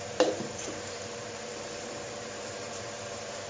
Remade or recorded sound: remade